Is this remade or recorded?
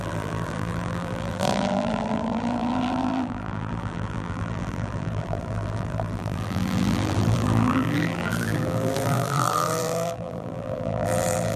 remade